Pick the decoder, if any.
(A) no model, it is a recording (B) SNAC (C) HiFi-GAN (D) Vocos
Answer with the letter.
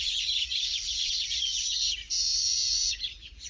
D